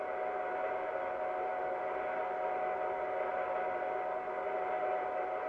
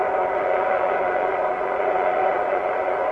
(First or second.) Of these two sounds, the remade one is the second